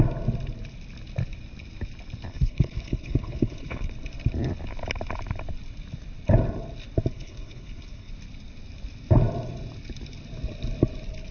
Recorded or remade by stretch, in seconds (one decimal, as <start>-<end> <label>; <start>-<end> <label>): 0.0-2.3 recorded; 2.3-3.9 remade; 3.9-7.1 recorded; 7.1-8.1 remade; 8.1-11.3 recorded

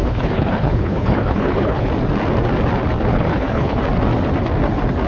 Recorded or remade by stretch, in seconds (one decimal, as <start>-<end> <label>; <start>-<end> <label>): 0.0-1.9 remade; 1.9-3.1 recorded; 3.1-3.8 remade; 3.8-5.1 recorded

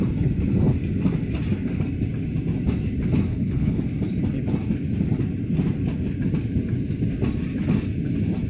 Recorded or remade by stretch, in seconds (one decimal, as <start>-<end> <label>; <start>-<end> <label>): 0.0-3.3 recorded; 3.3-3.8 remade; 3.8-8.5 recorded

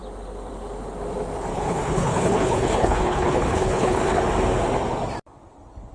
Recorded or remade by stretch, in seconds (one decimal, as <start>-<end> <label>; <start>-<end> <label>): 0.0-1.5 recorded; 1.5-4.2 remade; 4.2-5.9 recorded

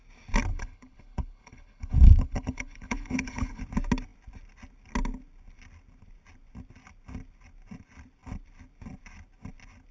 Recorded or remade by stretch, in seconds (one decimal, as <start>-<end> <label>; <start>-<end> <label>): 0.0-0.5 recorded; 0.5-3.6 remade; 3.6-9.9 recorded

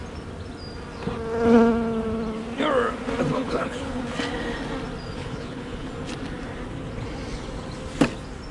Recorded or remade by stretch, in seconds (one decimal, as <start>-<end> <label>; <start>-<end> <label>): 0.0-3.4 recorded; 3.4-4.0 remade; 4.0-5.2 recorded; 5.2-5.9 remade; 5.9-8.5 recorded